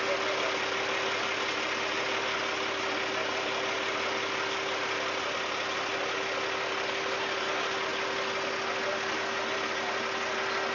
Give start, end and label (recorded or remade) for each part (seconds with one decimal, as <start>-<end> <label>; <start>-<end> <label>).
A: 0.0-10.7 recorded

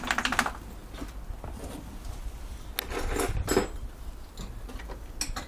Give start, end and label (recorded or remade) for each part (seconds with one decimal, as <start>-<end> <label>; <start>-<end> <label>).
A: 0.0-5.5 recorded

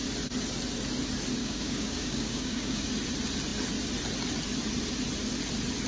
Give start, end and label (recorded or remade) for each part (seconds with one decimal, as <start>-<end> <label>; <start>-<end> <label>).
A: 0.0-1.4 recorded; 1.4-2.9 remade; 2.9-5.9 recorded

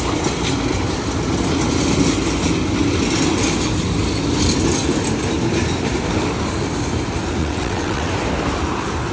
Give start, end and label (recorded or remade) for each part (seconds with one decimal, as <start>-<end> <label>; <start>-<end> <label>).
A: 0.0-7.4 recorded; 7.4-8.1 remade; 8.1-9.1 recorded

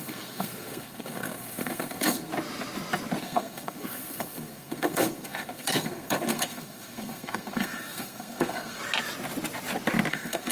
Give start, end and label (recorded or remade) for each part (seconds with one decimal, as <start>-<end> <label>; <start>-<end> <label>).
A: 0.0-2.3 remade; 2.3-3.2 recorded; 3.2-8.8 remade; 8.8-10.1 recorded; 10.1-10.5 remade

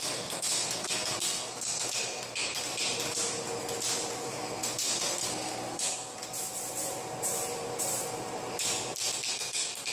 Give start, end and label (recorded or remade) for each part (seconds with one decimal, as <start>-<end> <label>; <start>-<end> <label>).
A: 0.0-2.7 remade; 2.7-4.3 recorded; 4.3-6.1 remade; 6.1-9.3 recorded; 9.3-9.9 remade

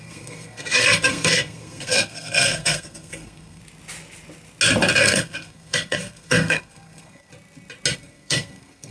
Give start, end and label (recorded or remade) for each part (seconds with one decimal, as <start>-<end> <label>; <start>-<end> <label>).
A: 0.0-3.6 remade; 3.6-5.0 recorded; 5.0-7.3 remade; 7.3-8.0 recorded; 8.0-8.9 remade

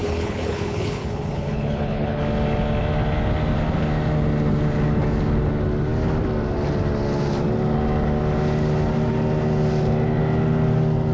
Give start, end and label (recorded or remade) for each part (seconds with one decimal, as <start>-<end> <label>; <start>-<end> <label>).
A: 0.0-2.2 remade; 2.2-11.1 recorded